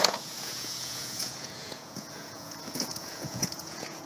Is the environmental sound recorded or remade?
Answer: remade